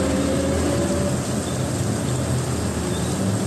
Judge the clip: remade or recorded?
recorded